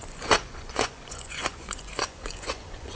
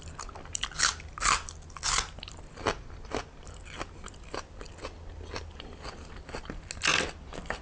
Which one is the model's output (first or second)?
first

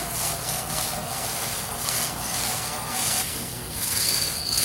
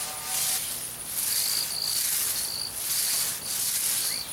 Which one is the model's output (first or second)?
first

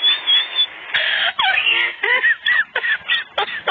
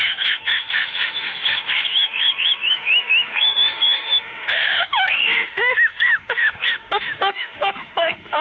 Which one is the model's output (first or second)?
second